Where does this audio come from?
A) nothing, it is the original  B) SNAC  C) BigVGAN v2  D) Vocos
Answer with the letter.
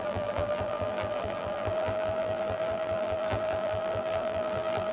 C